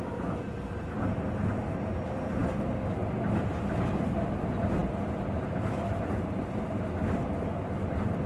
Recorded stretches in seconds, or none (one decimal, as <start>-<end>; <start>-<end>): 0.0-8.3